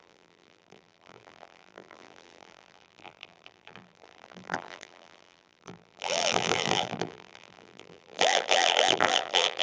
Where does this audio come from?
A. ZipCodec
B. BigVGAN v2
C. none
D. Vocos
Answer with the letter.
B